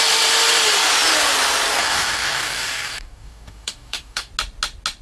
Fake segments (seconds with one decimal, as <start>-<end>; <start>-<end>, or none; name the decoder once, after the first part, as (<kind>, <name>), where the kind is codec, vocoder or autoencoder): 1.8-4.3 (codec, DAC)